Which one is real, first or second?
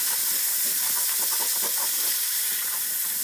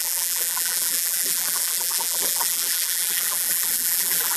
first